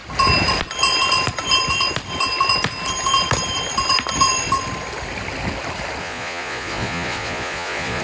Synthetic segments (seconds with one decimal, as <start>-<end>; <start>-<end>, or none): 6.0-8.0